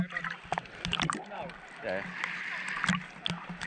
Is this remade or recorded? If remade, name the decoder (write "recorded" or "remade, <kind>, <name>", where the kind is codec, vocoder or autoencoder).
recorded